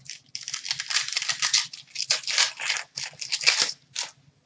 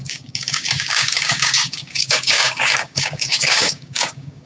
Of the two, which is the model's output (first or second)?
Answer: second